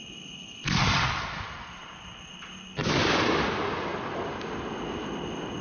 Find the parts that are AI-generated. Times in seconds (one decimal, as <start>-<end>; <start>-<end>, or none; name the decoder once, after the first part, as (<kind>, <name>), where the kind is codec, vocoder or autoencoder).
none